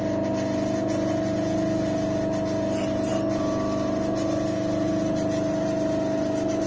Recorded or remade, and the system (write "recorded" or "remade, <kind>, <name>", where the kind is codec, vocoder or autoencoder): recorded